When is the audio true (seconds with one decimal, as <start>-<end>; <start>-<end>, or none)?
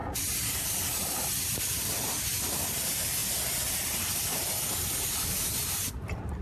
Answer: 0.0-6.4